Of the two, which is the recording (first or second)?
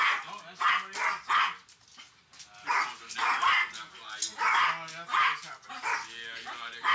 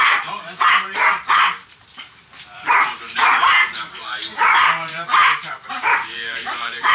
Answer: first